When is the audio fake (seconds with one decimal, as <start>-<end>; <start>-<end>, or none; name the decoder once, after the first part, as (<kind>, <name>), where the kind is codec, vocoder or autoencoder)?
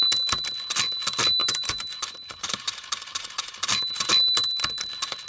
1.4-4.1 (vocoder, BigVGAN v2)